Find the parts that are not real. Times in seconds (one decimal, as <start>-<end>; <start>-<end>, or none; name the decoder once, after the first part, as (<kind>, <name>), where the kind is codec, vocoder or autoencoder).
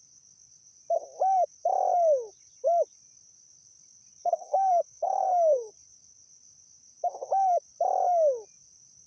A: 4.2-5.7 (codec, SNAC)